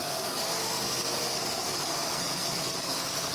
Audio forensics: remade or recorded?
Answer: remade